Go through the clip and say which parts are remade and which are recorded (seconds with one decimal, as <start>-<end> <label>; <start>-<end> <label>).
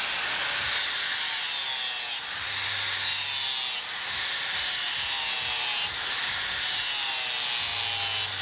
0.0-8.4 recorded